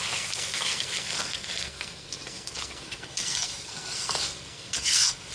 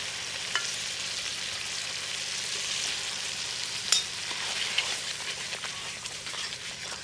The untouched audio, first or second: second